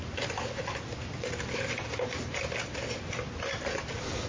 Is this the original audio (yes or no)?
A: yes